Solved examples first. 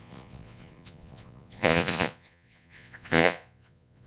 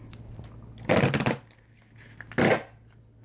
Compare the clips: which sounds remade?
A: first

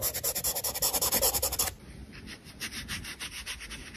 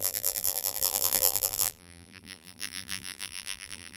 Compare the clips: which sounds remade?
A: second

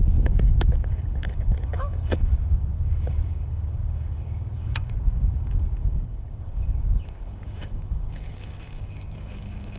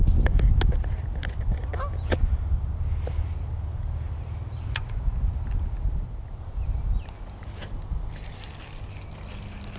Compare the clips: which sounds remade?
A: first